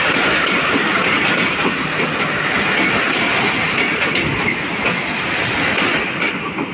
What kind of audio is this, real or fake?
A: real